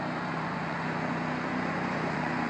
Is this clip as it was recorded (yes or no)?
no